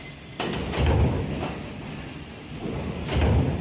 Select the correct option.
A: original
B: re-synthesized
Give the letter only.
A